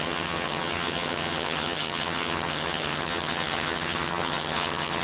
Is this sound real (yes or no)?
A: no